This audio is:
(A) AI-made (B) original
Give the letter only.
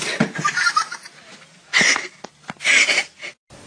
B